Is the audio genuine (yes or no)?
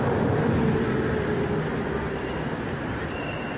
yes